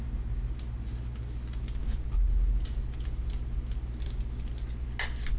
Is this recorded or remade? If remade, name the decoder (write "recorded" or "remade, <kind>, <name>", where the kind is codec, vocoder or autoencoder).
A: recorded